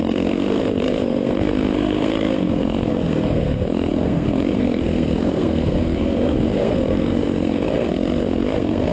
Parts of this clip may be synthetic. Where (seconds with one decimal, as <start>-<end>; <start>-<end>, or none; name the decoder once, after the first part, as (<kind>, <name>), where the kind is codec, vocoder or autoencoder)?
0.0-8.9 (codec, SNAC)